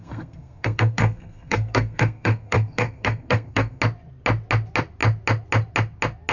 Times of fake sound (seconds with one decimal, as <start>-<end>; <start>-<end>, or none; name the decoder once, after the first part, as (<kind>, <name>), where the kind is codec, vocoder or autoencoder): 0.0-3.8 (codec, SNAC)